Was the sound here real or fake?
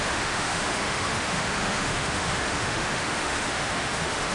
fake